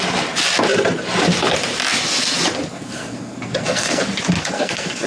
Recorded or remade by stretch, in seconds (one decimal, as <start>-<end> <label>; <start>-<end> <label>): 0.0-2.7 recorded; 2.7-4.0 remade; 4.0-4.4 recorded; 4.4-5.1 remade